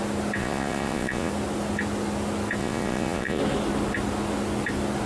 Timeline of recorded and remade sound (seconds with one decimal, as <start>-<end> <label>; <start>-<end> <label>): 0.0-0.4 recorded; 0.4-1.3 remade; 1.3-2.6 recorded; 2.6-3.4 remade; 3.4-5.1 recorded